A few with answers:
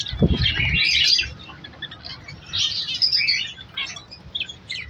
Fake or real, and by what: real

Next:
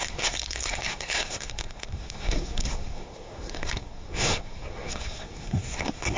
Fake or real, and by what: fake, codec, SNAC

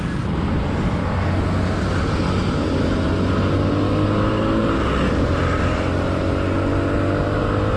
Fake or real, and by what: real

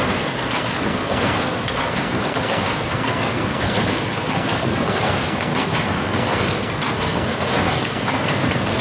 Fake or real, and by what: fake, codec, SNAC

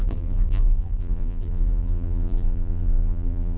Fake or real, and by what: fake, vocoder, BigVGAN v2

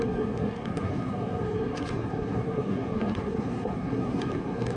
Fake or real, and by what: fake, codec, SNAC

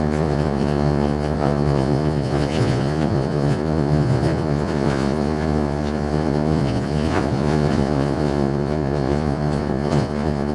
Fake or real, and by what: fake, vocoder, Vocos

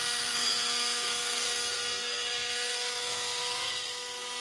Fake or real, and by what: fake, codec, SNAC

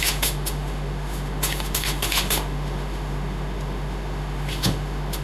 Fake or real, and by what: fake, autoencoder, DAC-VAE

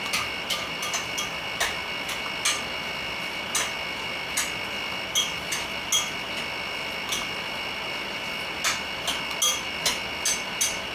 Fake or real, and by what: real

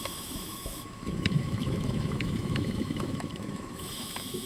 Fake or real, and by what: fake, autoencoder, DAC-VAE